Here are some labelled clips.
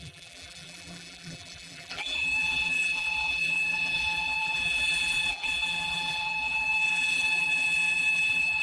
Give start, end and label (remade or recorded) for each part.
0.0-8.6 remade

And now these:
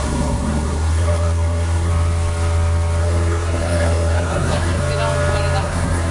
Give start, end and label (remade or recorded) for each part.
0.0-1.9 remade; 1.9-3.0 recorded; 3.0-4.8 remade; 4.8-5.6 recorded; 5.6-6.1 remade